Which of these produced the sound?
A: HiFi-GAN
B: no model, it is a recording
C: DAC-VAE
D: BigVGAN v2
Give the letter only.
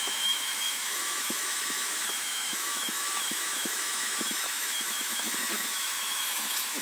C